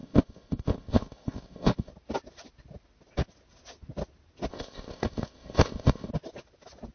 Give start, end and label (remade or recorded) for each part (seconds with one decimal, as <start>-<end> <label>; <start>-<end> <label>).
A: 0.0-1.9 remade; 1.9-4.5 recorded; 4.5-6.1 remade; 6.1-6.9 recorded